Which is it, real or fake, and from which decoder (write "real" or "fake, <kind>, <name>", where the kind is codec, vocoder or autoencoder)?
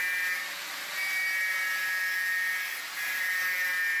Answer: real